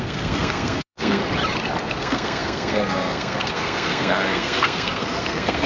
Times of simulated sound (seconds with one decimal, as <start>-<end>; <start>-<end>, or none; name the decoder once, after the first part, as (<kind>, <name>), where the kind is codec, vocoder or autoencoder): 0.0-1.2 (codec, SNAC); 1.8-5.7